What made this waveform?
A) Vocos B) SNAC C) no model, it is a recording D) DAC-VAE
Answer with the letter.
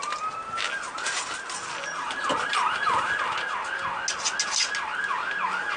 C